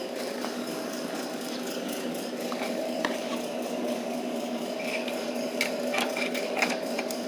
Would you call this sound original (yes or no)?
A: no